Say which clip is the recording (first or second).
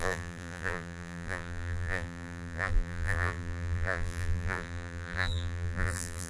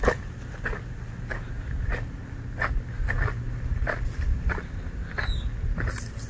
second